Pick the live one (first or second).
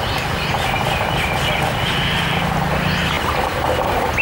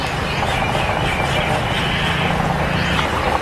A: second